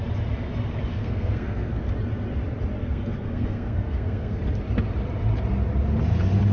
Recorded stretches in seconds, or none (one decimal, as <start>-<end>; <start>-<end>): 0.0-0.9; 1.9-2.8; 4.4-6.5